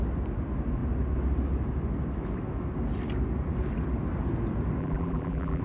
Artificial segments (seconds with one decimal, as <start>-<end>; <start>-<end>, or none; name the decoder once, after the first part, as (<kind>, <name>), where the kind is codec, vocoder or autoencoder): 4.8-5.6 (vocoder, BigVGAN v2)